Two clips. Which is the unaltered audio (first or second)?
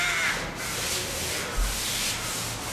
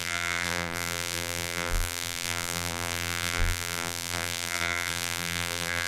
first